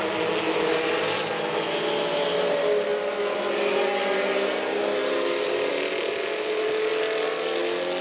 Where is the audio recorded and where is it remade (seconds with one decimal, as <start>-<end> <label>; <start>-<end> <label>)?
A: 0.0-8.0 recorded